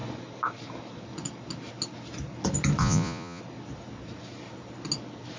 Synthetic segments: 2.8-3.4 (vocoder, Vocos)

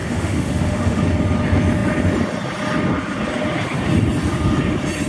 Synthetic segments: 0.0-1.0 (autoencoder, DAC-VAE)

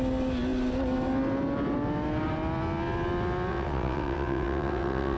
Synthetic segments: 3.5-5.2 (vocoder, WaveNeXt)

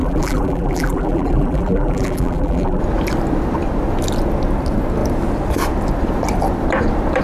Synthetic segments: 0.0-2.8 (vocoder, BigVGAN v2)

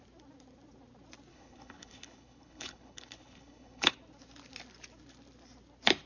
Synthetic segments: 1.3-3.9 (codec, HILCodec)